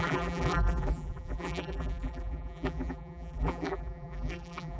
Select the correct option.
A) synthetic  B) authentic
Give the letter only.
A